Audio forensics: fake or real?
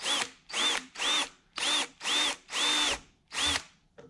real